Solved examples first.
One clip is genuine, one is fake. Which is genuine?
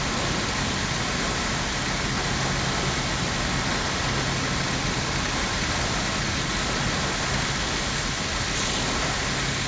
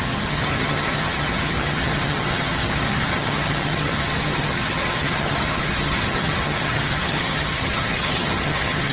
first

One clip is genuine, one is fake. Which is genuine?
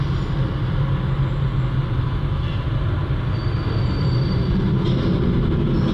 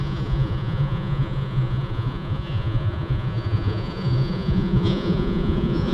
first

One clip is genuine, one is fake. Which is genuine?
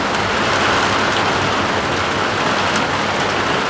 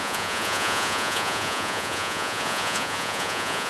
first